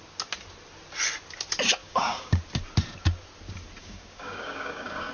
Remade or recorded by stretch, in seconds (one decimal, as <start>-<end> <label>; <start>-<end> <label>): 0.0-1.8 recorded; 1.8-2.4 remade; 2.4-3.8 recorded; 3.8-5.1 remade